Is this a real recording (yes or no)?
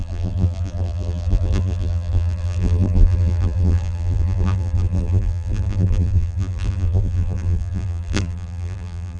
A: no